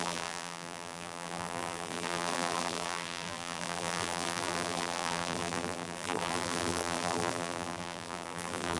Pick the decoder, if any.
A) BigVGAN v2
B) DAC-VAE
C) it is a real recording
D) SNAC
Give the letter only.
A